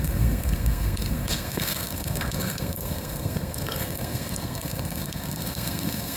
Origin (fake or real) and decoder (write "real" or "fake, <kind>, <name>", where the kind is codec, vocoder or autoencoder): fake, codec, SNAC